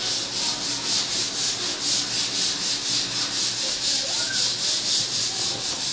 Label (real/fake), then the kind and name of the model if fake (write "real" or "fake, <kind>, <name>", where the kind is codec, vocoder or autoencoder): real